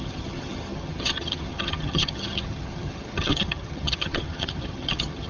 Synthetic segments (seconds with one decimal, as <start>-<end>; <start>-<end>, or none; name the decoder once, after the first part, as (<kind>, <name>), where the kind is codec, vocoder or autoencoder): 0.0-5.3 (vocoder, HiFi-GAN)